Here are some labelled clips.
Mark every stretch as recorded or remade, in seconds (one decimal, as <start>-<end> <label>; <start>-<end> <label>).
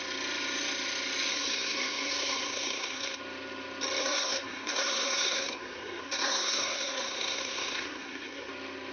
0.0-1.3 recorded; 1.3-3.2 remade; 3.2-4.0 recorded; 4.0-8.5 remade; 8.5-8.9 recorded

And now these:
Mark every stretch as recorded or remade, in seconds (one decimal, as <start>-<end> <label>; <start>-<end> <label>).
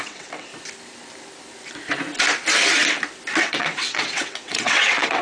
0.0-0.5 remade; 0.5-3.4 recorded; 3.4-5.2 remade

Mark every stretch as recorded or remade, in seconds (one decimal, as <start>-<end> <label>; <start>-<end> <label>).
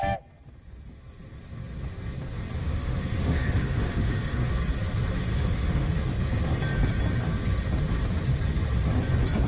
0.0-2.6 recorded; 2.6-4.5 remade; 4.5-5.3 recorded; 5.3-5.9 remade; 5.9-9.5 recorded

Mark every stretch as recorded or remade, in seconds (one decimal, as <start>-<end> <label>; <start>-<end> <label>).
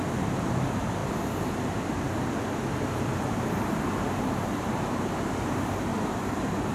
0.0-1.0 remade; 1.0-2.9 recorded; 2.9-5.9 remade; 5.9-6.7 recorded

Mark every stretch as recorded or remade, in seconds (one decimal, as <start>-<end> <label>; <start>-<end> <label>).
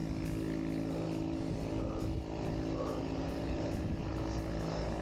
0.0-3.0 recorded; 3.0-4.1 remade; 4.1-5.0 recorded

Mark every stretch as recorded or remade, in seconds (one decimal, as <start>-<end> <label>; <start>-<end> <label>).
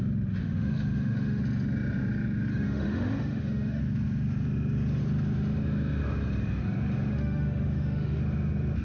0.0-0.4 recorded; 0.4-1.4 remade; 1.4-2.5 recorded; 2.5-3.8 remade; 3.8-7.1 recorded; 7.1-8.2 remade; 8.2-8.8 recorded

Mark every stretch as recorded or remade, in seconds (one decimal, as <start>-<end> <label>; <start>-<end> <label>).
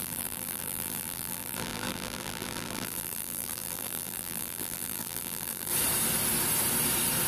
0.0-5.7 remade; 5.7-7.3 recorded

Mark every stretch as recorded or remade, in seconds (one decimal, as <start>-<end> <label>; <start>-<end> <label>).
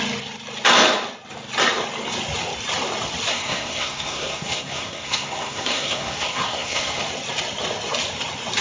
0.0-3.3 recorded; 3.3-7.0 remade; 7.0-8.6 recorded